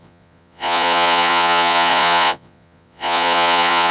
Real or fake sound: fake